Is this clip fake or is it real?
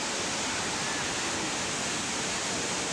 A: real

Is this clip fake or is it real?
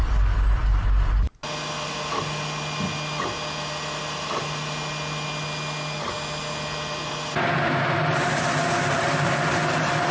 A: real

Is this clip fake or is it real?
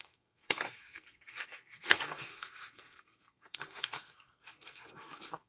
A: fake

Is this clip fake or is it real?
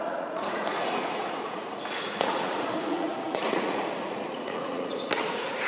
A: fake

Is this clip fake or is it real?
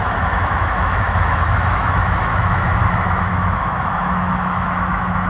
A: fake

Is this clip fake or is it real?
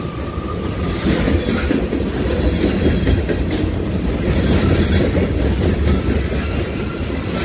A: real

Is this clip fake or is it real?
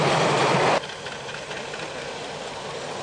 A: real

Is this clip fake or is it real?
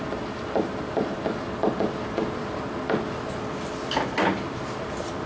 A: real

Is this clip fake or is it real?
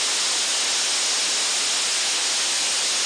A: real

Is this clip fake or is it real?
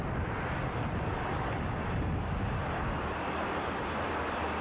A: real